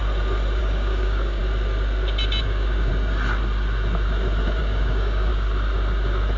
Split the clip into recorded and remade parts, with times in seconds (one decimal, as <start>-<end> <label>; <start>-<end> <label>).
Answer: 0.0-0.6 recorded; 0.6-1.4 remade; 1.4-2.4 recorded; 2.4-2.9 remade; 2.9-4.6 recorded; 4.6-5.3 remade; 5.3-6.4 recorded